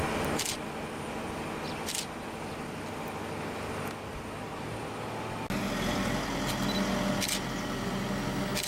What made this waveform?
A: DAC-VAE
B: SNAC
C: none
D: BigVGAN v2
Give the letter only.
C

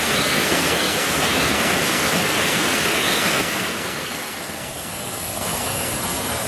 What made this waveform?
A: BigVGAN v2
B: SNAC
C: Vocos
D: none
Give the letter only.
B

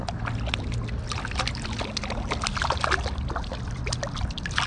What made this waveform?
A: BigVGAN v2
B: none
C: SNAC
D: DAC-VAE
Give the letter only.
B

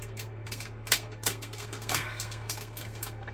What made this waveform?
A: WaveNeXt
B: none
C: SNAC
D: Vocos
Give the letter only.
C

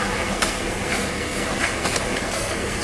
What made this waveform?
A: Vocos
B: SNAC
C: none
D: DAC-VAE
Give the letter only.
B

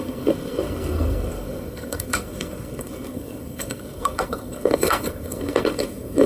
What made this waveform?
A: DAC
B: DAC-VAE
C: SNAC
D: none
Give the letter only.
C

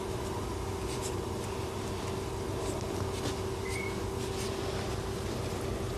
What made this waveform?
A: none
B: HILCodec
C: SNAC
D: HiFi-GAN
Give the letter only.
A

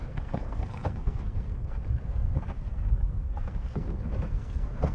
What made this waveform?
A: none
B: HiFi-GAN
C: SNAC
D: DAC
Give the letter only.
C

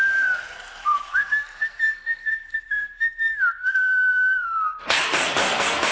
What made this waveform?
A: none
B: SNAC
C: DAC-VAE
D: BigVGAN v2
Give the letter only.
B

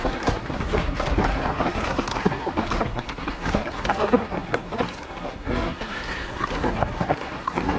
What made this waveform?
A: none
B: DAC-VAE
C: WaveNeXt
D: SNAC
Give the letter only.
D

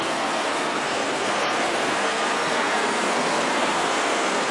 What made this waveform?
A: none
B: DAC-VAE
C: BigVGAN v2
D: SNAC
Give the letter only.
D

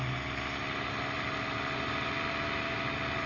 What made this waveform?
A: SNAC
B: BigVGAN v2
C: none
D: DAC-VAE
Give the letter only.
C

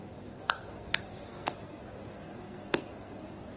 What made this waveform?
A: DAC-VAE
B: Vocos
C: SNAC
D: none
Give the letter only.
C